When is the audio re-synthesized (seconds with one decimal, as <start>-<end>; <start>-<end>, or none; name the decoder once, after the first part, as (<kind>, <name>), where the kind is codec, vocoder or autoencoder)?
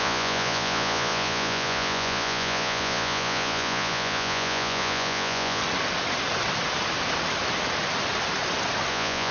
0.0-5.6 (vocoder, Vocos); 8.9-9.3